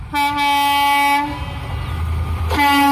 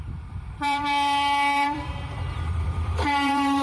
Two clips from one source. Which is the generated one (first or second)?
second